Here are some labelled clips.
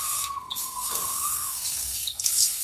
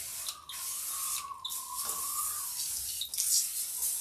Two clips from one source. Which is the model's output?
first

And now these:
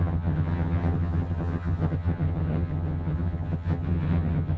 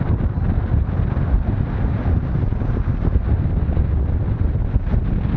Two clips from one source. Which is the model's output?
first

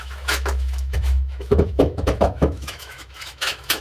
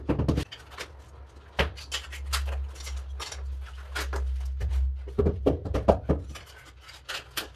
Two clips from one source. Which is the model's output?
first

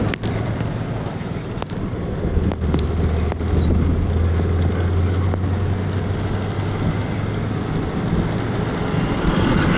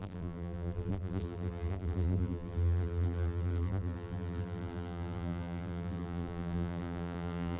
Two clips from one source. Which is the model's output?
second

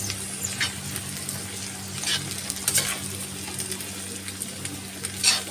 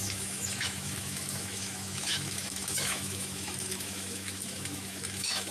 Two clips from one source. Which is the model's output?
second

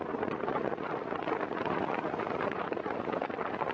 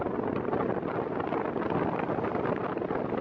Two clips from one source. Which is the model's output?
first